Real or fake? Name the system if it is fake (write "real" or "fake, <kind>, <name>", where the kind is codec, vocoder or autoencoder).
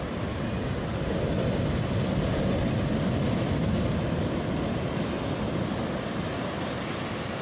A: real